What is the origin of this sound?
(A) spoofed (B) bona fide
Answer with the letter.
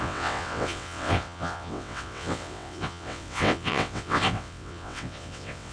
A